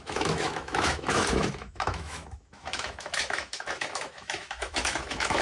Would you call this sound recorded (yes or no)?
no